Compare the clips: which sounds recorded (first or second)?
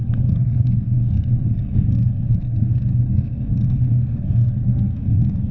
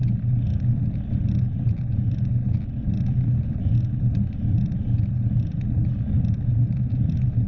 second